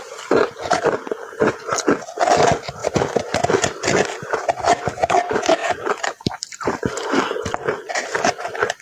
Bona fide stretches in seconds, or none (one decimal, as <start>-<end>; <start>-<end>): 0.0-5.6; 7.9-8.8